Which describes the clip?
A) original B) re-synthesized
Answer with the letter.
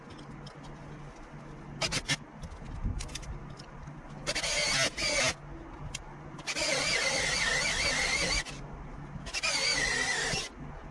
A